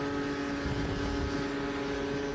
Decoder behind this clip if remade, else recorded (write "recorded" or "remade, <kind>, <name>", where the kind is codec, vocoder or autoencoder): recorded